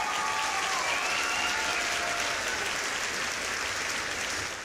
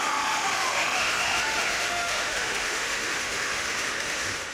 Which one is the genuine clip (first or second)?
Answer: first